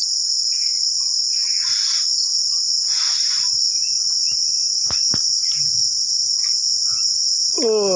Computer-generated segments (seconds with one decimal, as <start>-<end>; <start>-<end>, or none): none